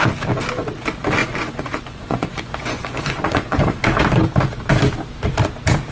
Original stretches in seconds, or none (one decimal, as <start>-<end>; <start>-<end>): 0.0-1.2; 3.8-5.9